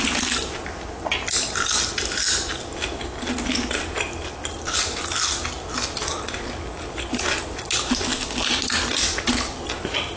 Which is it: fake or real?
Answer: real